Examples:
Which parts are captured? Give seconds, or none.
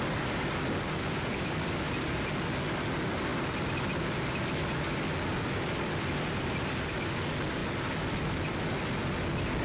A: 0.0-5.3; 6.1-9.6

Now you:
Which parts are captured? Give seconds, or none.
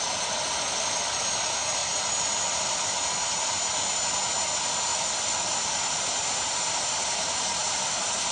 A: 0.0-1.8; 3.0-4.9; 6.1-8.3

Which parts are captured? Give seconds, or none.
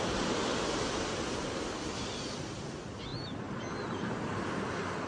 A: 0.0-0.4; 2.4-5.1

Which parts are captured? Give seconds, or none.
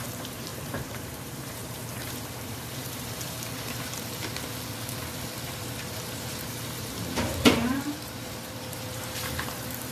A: 4.5-5.2